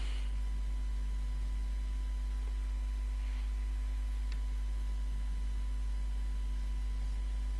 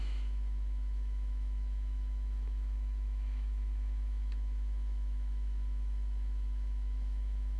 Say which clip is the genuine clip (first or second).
first